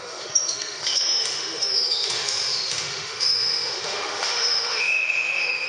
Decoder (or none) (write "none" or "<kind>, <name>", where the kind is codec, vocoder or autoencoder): autoencoder, DAC-VAE